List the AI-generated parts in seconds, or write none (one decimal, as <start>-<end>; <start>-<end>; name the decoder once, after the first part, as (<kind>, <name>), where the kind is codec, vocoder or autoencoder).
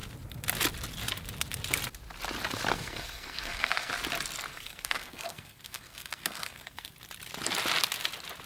2.7-3.9 (codec, SNAC); 4.5-6.9